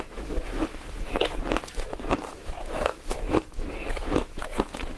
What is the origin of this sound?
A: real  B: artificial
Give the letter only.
B